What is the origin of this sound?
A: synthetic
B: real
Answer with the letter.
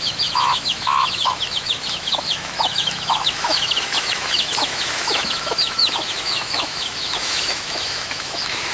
A